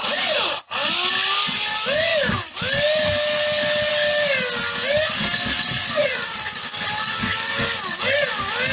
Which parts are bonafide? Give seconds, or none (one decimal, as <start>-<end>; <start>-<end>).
0.7-5.8; 6.6-8.7